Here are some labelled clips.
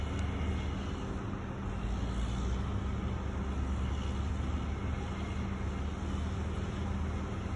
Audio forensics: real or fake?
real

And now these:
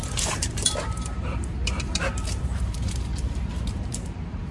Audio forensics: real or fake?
fake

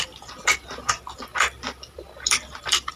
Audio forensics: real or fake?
fake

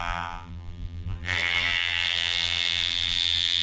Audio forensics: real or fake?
fake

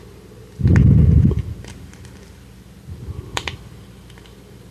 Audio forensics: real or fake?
fake